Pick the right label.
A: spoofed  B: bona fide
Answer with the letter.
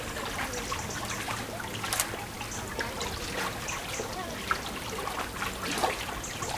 B